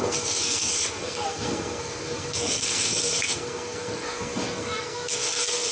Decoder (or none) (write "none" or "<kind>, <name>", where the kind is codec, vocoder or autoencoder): codec, SNAC